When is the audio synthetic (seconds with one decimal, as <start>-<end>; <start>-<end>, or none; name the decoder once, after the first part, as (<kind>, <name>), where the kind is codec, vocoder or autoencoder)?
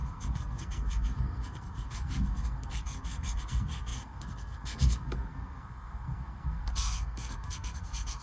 0.0-8.2 (codec, SNAC)